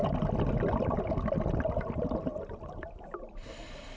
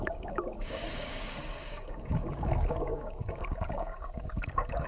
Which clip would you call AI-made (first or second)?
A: second